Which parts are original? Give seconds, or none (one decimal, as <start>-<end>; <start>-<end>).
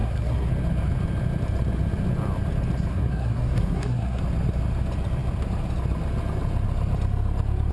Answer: 0.5-2.9; 4.2-7.7